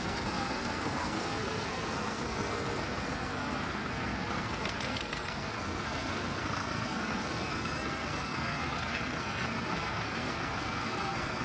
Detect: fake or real fake